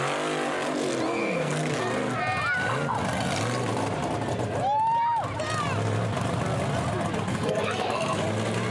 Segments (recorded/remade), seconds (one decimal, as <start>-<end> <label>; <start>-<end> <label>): 0.0-1.2 recorded; 1.2-1.8 remade; 1.8-7.3 recorded; 7.3-8.2 remade; 8.2-8.7 recorded